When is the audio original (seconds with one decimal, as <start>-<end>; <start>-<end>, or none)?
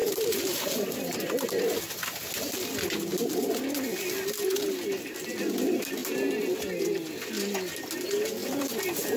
0.8-9.2